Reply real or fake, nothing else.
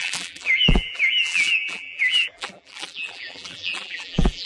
fake